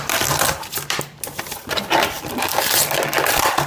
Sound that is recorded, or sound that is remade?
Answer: recorded